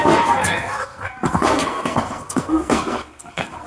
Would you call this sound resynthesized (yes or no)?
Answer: yes